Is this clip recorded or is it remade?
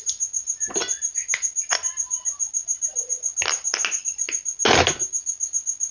recorded